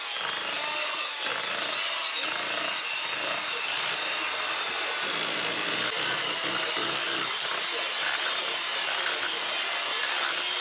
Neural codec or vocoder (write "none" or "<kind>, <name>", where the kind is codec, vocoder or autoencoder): none